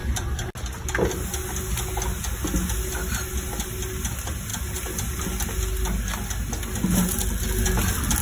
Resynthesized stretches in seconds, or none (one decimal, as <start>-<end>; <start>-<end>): none